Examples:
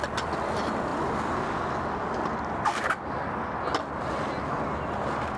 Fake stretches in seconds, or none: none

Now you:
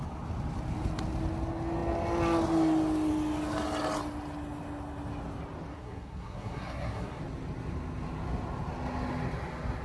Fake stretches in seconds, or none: 5.7-7.2 (codec, SNAC)

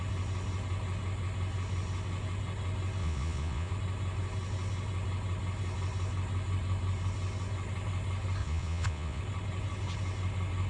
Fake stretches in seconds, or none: 3.0-3.7 (vocoder, Vocos); 8.4-9.2

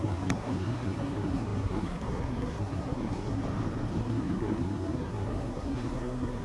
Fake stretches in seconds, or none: 0.0-3.4 (codec, SNAC); 4.0-6.4

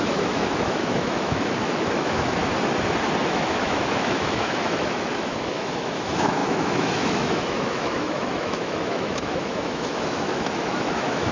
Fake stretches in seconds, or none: 0.0-2.4 (autoencoder, DAC-VAE); 3.2-11.3

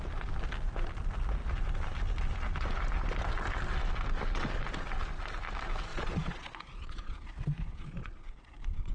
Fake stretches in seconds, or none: 5.9-8.9 (vocoder, Vocos)

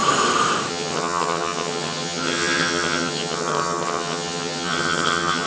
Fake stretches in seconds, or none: 0.7-5.5 (vocoder, HiFi-GAN)